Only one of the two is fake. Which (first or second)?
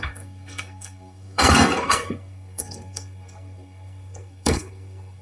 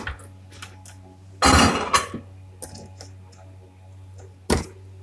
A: first